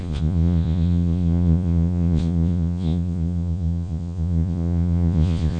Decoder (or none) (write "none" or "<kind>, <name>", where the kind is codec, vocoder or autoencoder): vocoder, Vocos